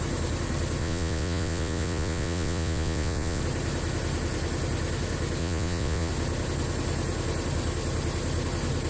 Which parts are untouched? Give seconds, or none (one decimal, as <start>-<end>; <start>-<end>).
0.0-0.8; 3.4-5.4; 6.1-8.9